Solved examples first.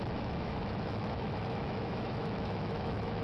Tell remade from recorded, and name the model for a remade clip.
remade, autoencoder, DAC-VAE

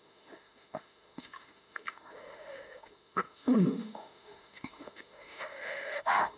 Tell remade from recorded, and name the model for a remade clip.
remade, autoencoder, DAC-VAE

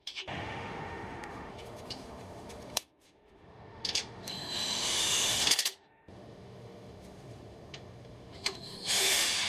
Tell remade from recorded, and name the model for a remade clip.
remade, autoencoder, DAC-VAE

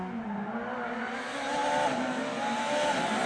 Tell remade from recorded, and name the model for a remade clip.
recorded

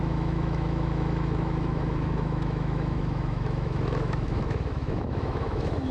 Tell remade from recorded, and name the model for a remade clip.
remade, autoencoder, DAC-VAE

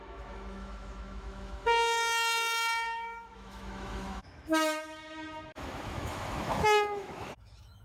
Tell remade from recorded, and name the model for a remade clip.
remade, autoencoder, DAC-VAE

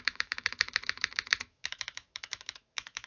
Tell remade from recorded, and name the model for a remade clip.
remade, autoencoder, DAC-VAE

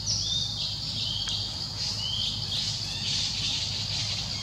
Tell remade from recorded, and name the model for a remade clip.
recorded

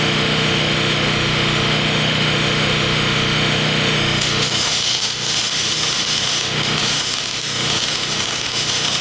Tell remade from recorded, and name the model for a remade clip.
remade, autoencoder, DAC-VAE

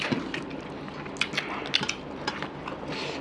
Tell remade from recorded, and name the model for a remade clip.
recorded